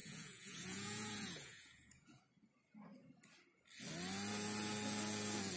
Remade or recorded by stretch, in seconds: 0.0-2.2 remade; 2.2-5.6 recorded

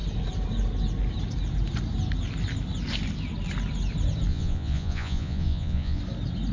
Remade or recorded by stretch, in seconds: 0.0-4.3 recorded; 4.3-6.0 remade; 6.0-6.5 recorded

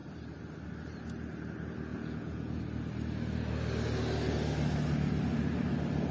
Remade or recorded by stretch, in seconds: 0.0-1.9 recorded; 1.9-2.6 remade; 2.6-6.1 recorded

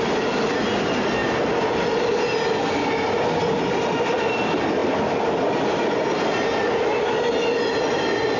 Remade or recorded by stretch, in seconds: 0.0-8.4 recorded

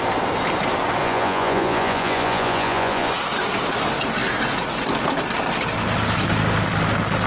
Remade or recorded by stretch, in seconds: 0.0-1.0 recorded; 1.0-3.1 remade; 3.1-7.3 recorded

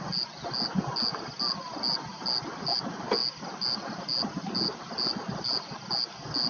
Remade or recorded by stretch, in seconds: 0.0-6.5 recorded

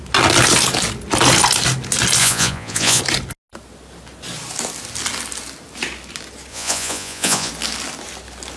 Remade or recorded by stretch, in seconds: 0.0-2.2 recorded; 2.2-3.0 remade; 3.0-6.5 recorded; 6.5-7.5 remade; 7.5-8.6 recorded

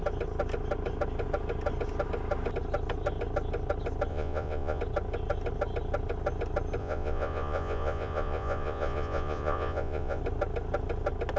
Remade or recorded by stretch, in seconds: 0.0-4.1 recorded; 4.1-4.8 remade; 4.8-6.8 recorded; 6.8-10.2 remade; 10.2-11.4 recorded